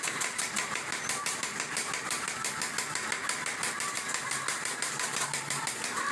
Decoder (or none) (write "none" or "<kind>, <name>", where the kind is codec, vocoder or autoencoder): vocoder, BigVGAN v2